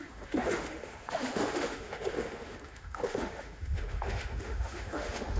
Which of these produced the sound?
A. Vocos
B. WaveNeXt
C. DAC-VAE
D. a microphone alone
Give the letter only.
C